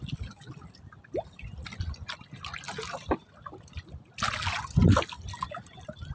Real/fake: real